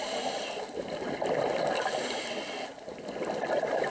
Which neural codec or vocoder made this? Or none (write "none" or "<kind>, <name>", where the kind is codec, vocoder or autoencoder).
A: none